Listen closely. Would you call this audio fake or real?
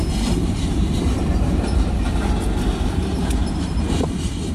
fake